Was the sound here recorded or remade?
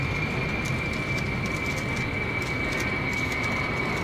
recorded